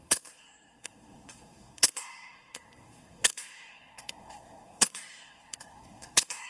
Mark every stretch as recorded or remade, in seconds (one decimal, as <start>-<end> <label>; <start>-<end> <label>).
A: 0.0-6.5 remade